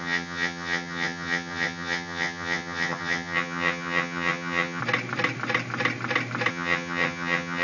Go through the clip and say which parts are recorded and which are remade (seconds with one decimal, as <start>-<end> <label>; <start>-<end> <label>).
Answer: 0.0-4.8 remade; 4.8-6.5 recorded; 6.5-7.6 remade